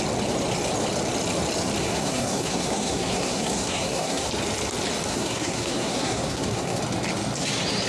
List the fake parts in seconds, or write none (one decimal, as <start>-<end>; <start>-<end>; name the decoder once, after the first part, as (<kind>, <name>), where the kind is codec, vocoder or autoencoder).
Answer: 1.8-4.3 (codec, SNAC); 5.1-6.8